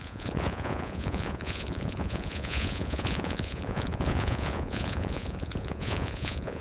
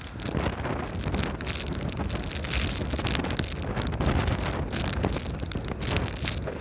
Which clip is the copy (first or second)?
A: first